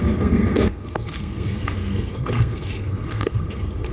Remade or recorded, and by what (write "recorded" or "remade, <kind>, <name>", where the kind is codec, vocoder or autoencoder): remade, codec, SNAC